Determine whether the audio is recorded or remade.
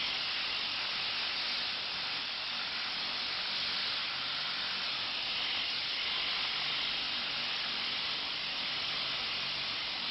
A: recorded